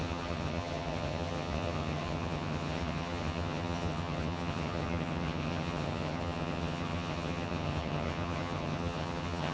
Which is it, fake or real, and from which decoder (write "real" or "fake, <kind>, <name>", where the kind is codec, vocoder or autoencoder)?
fake, vocoder, HiFi-GAN